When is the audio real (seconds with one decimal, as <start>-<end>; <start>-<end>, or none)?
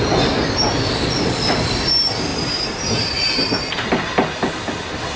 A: 0.0-2.3; 3.7-5.2